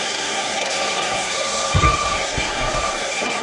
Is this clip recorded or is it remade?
remade